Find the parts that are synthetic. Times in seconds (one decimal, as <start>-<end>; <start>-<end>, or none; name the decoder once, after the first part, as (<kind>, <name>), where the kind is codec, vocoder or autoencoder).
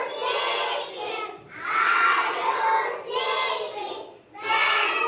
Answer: 1.5-2.7 (vocoder, WaveNeXt)